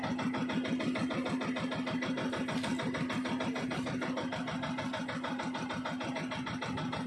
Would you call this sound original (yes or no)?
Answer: yes